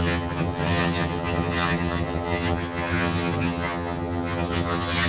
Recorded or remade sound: remade